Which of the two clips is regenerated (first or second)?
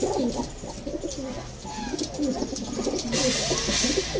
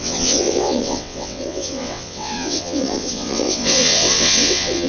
second